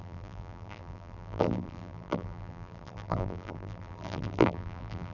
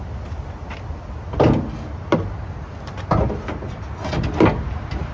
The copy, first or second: first